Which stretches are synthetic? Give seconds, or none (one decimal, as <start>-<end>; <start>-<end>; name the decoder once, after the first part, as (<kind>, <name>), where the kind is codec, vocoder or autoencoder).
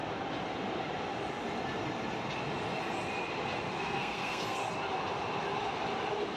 3.8-4.6 (codec, SNAC)